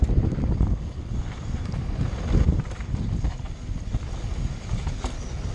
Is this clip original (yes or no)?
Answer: yes